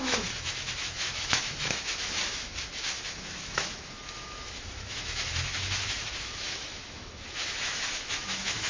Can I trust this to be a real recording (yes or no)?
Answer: no